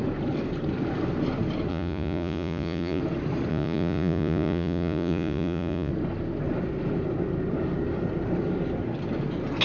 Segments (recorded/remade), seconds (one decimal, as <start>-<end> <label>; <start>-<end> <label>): 0.0-1.7 recorded; 1.7-3.0 remade; 3.0-3.5 recorded; 3.5-5.9 remade; 5.9-9.6 recorded